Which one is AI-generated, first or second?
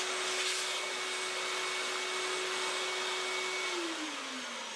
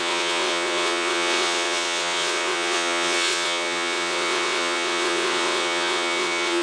second